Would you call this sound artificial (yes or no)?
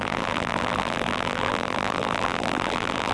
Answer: yes